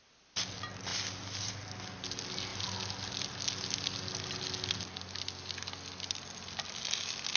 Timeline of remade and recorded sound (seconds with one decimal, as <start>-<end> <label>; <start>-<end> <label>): 0.0-7.4 recorded